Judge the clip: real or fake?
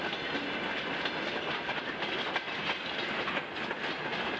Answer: real